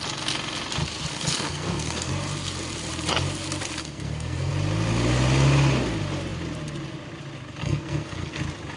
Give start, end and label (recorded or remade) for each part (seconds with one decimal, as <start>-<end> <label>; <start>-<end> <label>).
0.0-1.1 recorded; 1.1-2.1 remade; 2.1-3.8 recorded; 3.8-4.5 remade; 4.5-7.6 recorded; 7.6-8.4 remade; 8.4-8.8 recorded